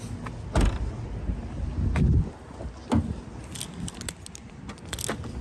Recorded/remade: recorded